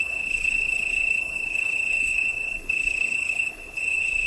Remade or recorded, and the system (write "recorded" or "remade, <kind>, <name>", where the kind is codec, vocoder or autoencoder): remade, codec, HILCodec